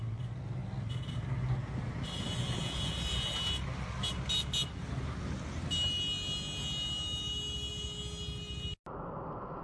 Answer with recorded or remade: recorded